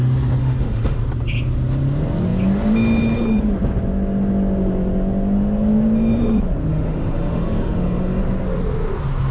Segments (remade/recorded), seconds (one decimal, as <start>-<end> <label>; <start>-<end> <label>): 0.0-0.4 recorded; 0.4-1.0 remade; 1.0-6.7 recorded; 6.7-8.2 remade; 8.2-9.3 recorded